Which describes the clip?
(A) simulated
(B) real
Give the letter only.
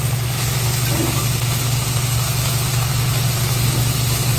B